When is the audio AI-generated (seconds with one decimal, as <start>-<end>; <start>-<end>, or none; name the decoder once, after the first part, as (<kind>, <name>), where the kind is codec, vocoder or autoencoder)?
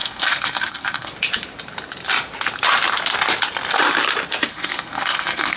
0.0-1.1 (codec, SNAC); 4.5-5.6